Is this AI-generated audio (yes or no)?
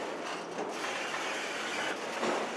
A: no